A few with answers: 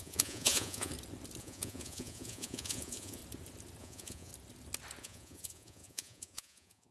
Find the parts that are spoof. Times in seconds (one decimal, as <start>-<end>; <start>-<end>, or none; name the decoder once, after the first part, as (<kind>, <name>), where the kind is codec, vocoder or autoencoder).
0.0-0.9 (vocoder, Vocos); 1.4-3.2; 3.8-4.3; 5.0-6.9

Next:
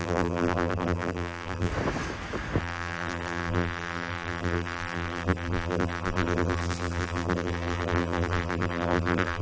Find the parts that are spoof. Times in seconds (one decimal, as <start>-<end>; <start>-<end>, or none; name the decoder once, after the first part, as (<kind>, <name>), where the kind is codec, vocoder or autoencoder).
0.0-1.7 (vocoder, BigVGAN v2); 2.6-9.4

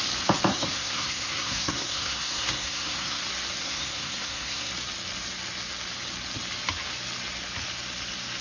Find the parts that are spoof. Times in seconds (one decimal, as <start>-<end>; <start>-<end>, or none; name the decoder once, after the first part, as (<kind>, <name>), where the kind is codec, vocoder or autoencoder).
0.5-3.2 (codec, SNAC); 3.6-4.7